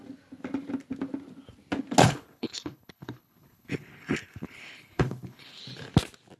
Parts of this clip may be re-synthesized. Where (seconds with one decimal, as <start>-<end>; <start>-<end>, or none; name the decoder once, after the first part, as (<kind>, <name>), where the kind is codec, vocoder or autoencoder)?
2.0-5.6 (codec, HILCodec)